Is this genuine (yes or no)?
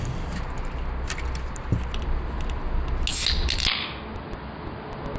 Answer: yes